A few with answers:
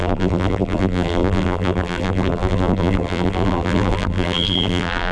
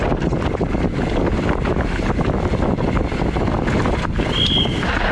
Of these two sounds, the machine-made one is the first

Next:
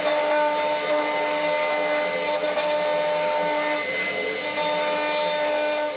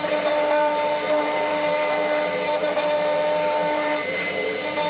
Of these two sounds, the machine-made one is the second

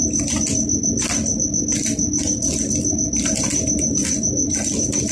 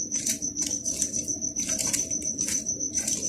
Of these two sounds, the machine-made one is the second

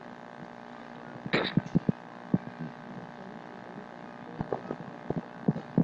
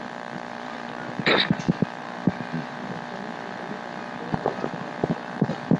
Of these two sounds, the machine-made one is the second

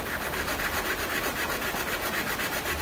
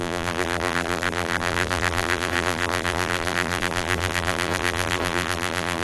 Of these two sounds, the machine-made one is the second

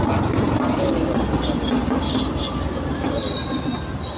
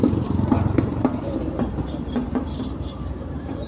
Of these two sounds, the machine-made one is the second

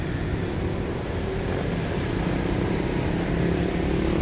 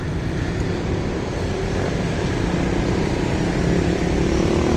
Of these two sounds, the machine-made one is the second